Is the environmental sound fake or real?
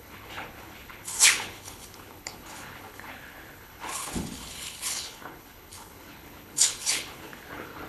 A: fake